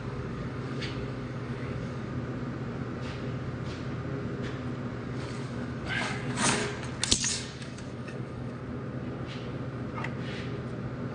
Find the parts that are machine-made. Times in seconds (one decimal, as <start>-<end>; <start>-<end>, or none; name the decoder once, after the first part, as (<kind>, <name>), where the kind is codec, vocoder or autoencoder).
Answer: 0.0-2.1 (codec, DAC); 5.0-6.6; 7.3-8.6